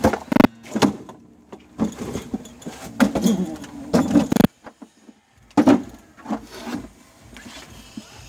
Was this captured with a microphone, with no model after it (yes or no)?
yes